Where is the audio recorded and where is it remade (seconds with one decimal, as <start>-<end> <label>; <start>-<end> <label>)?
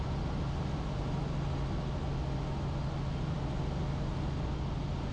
0.0-5.1 recorded